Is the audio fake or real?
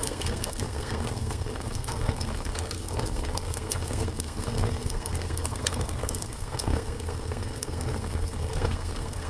fake